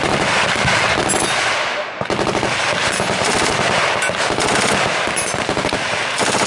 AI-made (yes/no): no